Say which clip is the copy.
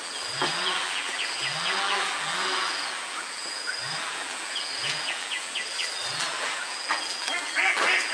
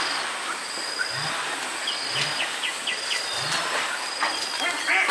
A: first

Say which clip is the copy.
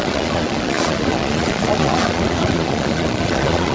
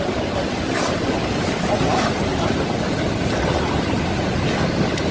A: first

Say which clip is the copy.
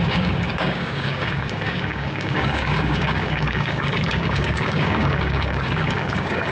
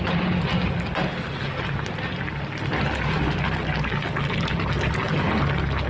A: first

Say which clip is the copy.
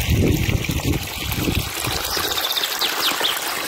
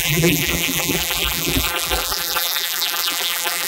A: second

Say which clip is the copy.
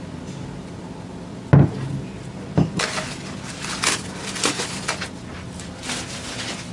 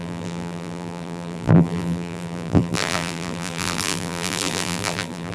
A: second